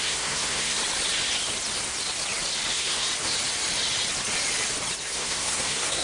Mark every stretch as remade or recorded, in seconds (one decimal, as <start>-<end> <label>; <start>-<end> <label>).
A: 0.0-0.8 remade; 0.8-2.7 recorded; 2.7-3.1 remade; 3.1-5.0 recorded; 5.0-6.0 remade